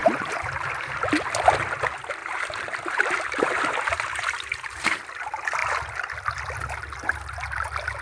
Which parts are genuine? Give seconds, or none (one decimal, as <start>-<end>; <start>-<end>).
0.8-2.2; 5.0-8.0